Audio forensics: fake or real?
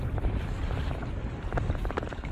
real